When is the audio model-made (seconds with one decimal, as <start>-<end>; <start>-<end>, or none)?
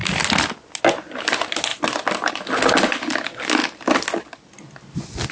none